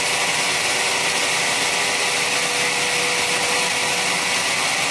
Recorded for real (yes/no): yes